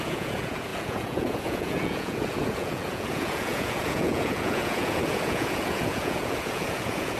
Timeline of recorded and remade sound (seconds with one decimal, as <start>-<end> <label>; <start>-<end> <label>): 0.0-7.2 remade